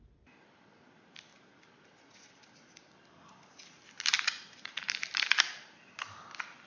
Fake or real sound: real